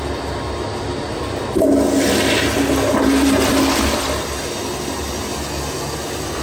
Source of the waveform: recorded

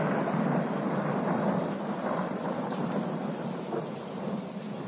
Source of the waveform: remade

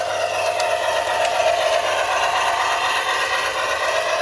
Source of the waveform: recorded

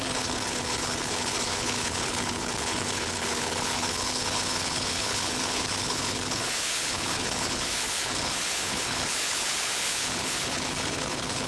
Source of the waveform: remade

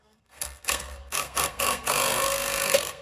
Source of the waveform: remade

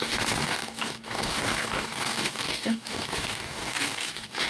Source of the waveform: remade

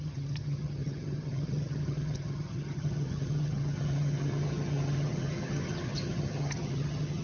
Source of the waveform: remade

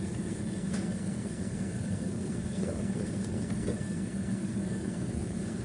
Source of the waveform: remade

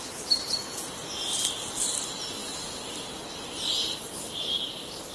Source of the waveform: recorded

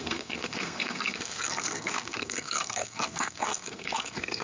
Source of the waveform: remade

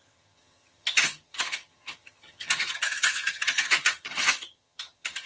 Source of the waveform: remade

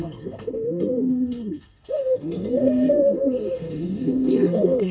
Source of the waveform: remade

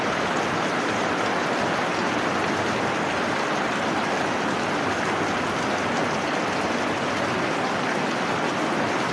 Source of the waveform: recorded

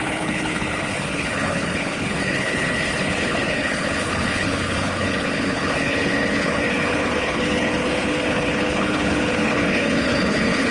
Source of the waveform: remade